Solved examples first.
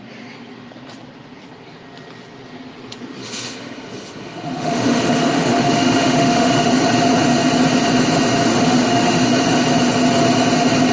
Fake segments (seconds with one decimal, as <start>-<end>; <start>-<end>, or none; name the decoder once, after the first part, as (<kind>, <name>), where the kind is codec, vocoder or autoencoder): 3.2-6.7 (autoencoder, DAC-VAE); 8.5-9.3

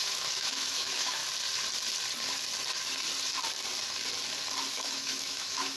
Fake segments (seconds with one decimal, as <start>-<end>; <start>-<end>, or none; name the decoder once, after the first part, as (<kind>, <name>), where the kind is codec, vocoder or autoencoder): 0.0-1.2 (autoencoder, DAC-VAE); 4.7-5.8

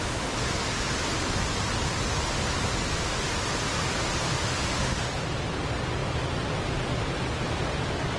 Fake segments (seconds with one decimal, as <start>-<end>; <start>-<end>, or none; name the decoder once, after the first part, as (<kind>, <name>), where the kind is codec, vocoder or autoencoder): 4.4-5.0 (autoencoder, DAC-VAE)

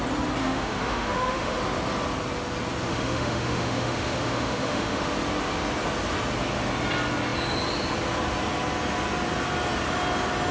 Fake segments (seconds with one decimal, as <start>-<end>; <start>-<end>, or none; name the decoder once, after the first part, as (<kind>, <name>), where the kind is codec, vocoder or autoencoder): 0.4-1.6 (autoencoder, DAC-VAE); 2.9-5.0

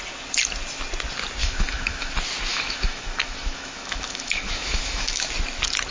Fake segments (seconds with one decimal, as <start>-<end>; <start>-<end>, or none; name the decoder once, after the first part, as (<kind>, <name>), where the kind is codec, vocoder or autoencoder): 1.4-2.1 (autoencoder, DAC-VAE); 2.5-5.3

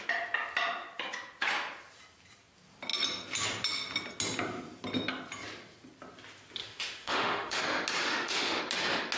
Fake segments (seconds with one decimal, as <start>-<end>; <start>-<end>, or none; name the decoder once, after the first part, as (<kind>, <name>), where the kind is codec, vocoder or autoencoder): 6.6-7.6 (autoencoder, DAC-VAE); 8.0-8.6

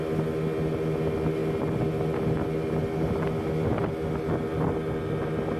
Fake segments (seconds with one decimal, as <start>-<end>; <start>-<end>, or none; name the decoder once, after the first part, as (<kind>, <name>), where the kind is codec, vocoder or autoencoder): none